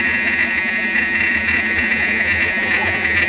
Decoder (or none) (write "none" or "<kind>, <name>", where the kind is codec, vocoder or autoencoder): vocoder, Vocos